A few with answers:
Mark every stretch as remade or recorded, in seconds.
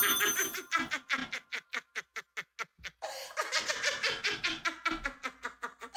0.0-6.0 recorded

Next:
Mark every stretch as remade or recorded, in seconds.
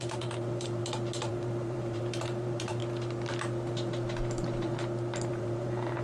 0.0-0.8 remade; 0.8-1.3 recorded; 1.3-2.8 remade; 2.8-5.3 recorded; 5.3-6.0 remade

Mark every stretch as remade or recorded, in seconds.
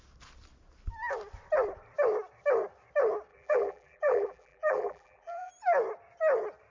0.0-3.3 recorded; 3.3-5.5 remade; 5.5-6.7 recorded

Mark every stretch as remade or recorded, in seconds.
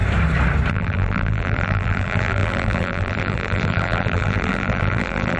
0.0-0.7 recorded; 0.7-5.4 remade